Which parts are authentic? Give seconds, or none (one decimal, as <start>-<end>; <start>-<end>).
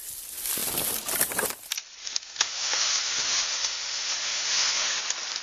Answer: 0.0-2.0; 5.0-5.4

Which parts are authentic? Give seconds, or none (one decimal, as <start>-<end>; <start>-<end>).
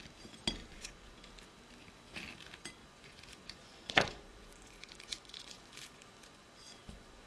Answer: 0.0-0.6; 1.3-2.8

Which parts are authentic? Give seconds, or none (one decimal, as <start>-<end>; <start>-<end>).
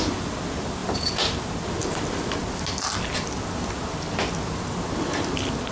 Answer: 0.0-5.7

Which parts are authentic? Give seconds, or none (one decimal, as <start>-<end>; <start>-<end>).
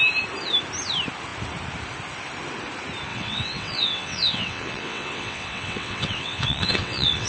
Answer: 0.0-3.1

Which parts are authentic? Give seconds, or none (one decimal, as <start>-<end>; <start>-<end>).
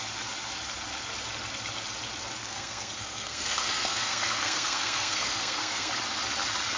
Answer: 0.0-2.4; 5.9-6.8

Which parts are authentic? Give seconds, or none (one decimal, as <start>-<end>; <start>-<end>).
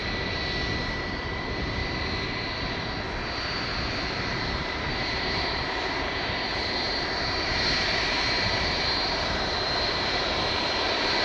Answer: 0.0-0.7; 1.8-4.3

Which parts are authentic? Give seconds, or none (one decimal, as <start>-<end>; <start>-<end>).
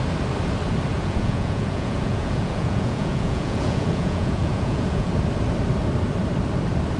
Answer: 0.0-0.9; 5.1-7.0